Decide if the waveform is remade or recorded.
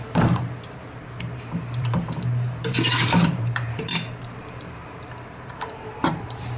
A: remade